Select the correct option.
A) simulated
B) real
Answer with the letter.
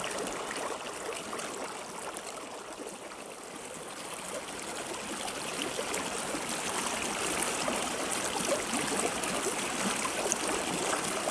B